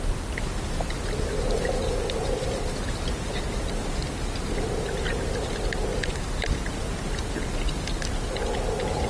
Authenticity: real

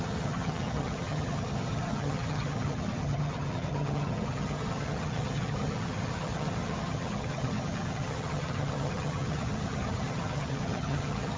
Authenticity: fake